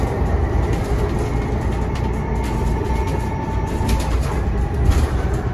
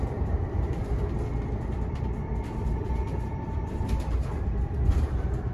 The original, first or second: first